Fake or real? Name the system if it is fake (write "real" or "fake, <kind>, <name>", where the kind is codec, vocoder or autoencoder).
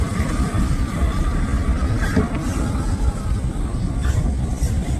real